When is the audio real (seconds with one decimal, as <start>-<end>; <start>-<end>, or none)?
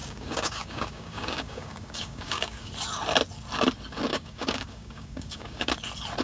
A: 2.7-4.1; 5.7-6.2